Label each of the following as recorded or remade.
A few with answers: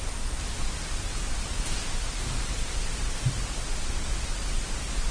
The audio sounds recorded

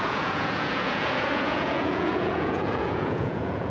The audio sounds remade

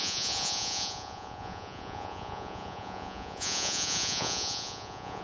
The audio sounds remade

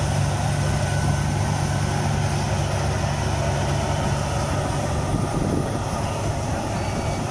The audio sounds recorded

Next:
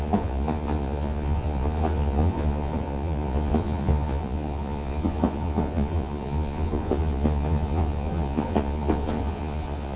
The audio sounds remade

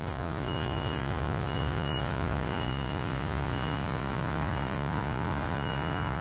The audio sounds remade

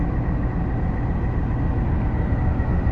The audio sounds recorded